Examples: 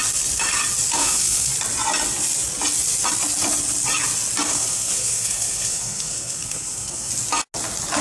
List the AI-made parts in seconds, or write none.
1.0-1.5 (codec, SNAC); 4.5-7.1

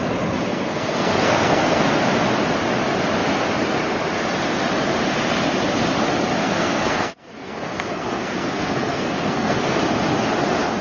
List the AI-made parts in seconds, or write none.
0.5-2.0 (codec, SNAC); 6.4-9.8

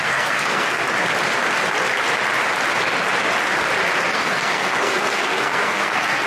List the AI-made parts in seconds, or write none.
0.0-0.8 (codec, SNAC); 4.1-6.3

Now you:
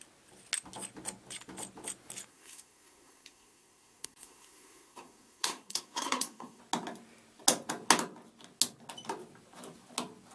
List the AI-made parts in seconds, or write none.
2.3-6.6 (codec, SNAC)

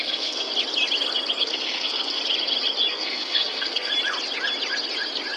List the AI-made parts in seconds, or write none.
0.0-0.5 (codec, SNAC); 1.4-2.2; 2.9-3.9

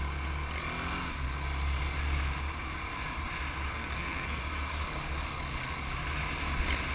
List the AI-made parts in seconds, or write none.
3.7-4.4 (codec, SNAC)

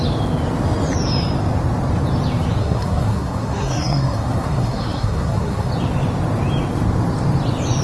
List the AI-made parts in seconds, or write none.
2.6-5.7 (codec, SNAC)